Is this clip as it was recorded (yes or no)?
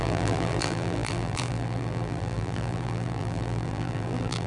no